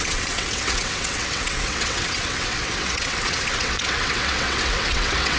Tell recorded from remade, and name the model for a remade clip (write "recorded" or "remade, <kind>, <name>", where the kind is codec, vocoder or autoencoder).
remade, vocoder, WaveNeXt